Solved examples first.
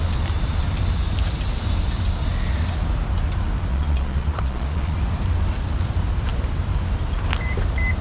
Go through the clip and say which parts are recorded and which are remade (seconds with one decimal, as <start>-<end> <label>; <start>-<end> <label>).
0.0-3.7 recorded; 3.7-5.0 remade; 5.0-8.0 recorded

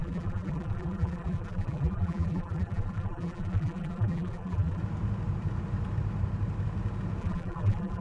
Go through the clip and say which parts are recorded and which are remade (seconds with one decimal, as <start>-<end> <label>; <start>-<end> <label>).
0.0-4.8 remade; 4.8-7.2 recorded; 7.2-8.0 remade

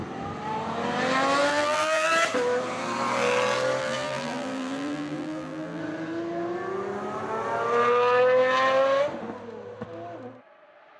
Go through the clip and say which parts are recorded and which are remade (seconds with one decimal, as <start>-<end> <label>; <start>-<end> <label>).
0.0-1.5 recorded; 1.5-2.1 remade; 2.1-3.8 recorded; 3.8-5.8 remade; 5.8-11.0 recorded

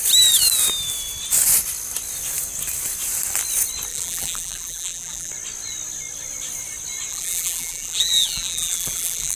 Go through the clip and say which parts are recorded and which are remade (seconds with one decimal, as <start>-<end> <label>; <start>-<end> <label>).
0.0-3.9 recorded; 3.9-5.3 remade; 5.3-7.1 recorded; 7.1-9.4 remade

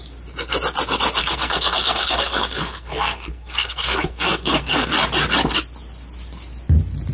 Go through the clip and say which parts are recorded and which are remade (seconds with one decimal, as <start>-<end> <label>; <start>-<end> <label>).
0.0-1.2 recorded; 1.2-4.9 remade; 4.9-7.1 recorded

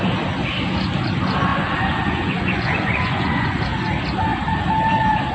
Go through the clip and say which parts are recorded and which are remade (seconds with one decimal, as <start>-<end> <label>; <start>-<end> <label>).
0.0-1.5 recorded; 1.5-3.6 remade; 3.6-5.3 recorded

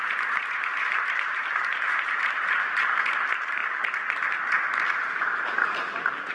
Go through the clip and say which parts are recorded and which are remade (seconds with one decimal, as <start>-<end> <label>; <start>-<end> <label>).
0.0-0.7 remade; 0.7-1.9 recorded; 1.9-3.6 remade; 3.6-4.9 recorded; 4.9-5.6 remade; 5.6-6.3 recorded

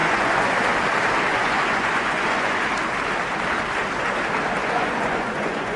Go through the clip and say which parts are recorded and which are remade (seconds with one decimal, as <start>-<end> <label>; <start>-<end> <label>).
0.0-0.5 remade; 0.5-1.3 recorded; 1.3-2.6 remade; 2.6-4.6 recorded; 4.6-5.8 remade